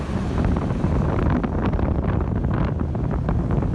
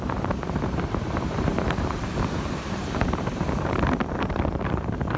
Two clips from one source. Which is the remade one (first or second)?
second